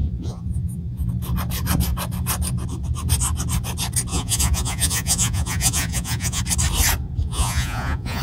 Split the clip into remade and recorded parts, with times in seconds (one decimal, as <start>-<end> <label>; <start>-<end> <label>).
0.0-1.1 remade; 1.1-4.1 recorded; 4.1-6.4 remade; 6.4-7.2 recorded; 7.2-8.2 remade